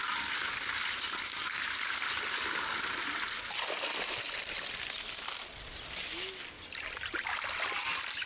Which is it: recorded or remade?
recorded